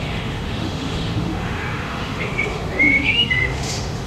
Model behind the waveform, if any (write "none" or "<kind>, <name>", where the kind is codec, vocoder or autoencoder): autoencoder, DAC-VAE